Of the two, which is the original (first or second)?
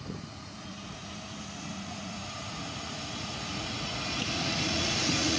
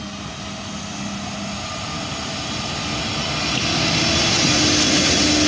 second